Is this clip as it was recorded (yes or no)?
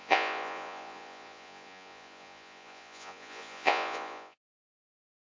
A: no